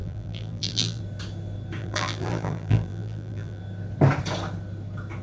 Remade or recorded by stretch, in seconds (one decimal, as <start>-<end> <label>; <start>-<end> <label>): 0.0-1.0 remade; 1.0-1.8 recorded; 1.8-3.6 remade; 3.6-5.2 recorded